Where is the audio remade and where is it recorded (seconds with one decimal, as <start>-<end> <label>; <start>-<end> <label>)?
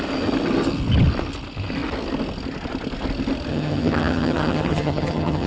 0.0-3.5 recorded; 3.5-5.5 remade